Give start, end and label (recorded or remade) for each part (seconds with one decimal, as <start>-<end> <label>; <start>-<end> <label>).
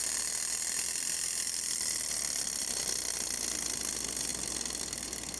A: 0.0-4.3 remade; 4.3-4.8 recorded; 4.8-5.4 remade